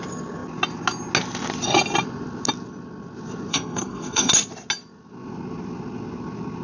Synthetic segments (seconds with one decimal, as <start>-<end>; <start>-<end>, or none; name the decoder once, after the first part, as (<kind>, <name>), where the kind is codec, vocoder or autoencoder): 3.5-4.3 (codec, SNAC)